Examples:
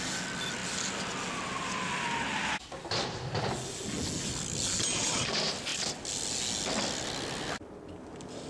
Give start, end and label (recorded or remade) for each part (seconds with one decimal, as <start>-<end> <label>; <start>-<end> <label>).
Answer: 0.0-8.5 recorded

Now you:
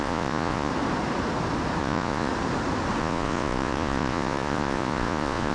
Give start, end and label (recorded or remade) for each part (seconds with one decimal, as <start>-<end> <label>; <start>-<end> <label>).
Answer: 0.0-0.7 remade; 0.7-1.8 recorded; 1.8-2.3 remade; 2.3-3.0 recorded; 3.0-5.5 remade

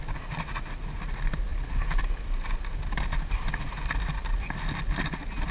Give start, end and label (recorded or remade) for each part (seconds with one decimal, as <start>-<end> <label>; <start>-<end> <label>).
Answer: 0.0-5.5 recorded

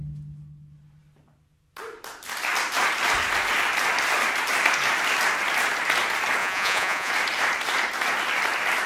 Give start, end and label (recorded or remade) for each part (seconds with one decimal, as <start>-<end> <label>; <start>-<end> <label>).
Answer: 0.0-6.4 recorded; 6.4-7.1 remade; 7.1-8.9 recorded